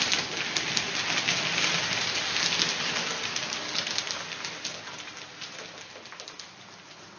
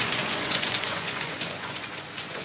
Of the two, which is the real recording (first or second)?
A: first